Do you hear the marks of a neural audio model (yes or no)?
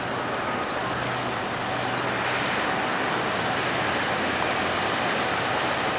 no